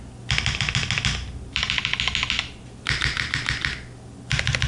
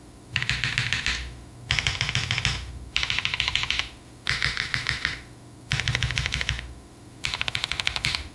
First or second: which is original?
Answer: first